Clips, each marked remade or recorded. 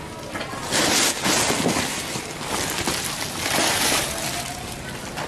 recorded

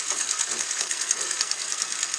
remade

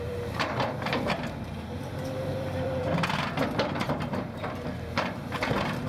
remade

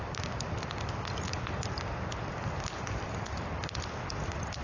recorded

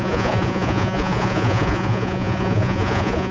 remade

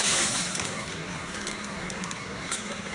remade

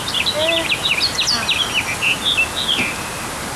recorded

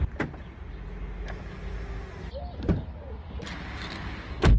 recorded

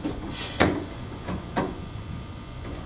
remade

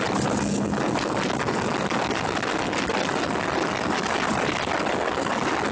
recorded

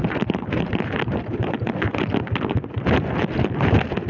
recorded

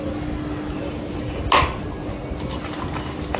recorded